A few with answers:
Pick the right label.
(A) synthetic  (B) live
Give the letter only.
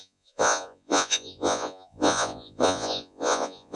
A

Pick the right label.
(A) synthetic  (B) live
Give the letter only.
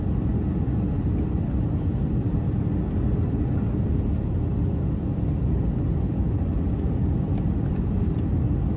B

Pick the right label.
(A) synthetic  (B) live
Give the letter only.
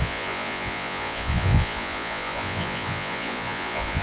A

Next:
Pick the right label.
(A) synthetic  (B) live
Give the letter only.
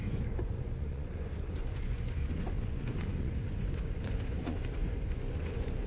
A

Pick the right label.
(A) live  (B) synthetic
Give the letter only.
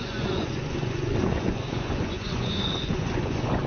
B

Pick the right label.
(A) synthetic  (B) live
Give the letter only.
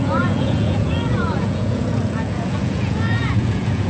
A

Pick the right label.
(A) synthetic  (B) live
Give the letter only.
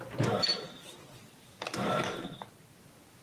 B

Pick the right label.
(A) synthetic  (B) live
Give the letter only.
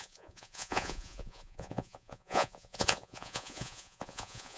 A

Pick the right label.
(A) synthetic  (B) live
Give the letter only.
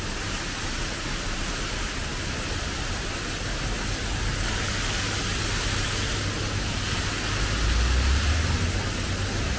B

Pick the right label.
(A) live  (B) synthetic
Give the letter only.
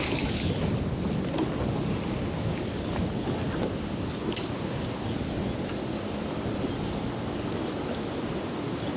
A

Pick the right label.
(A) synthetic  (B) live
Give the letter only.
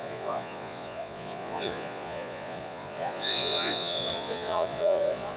A